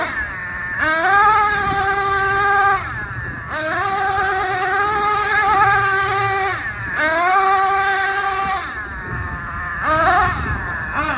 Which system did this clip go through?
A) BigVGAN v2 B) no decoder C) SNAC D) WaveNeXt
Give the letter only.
B